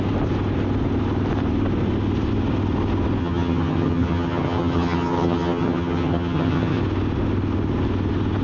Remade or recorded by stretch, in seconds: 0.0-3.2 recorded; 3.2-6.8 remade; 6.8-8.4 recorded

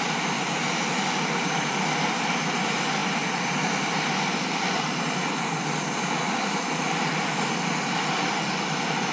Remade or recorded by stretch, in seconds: 0.0-9.1 recorded

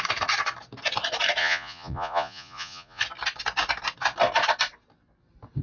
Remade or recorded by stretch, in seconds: 0.0-1.4 recorded; 1.4-3.0 remade; 3.0-5.6 recorded

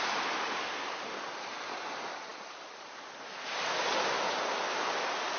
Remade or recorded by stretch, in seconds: 0.0-5.4 recorded

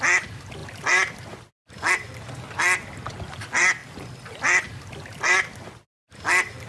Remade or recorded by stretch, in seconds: 0.0-6.7 recorded

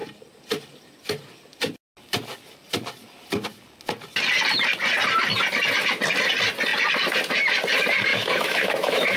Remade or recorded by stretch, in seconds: 0.0-8.1 recorded; 8.1-9.2 remade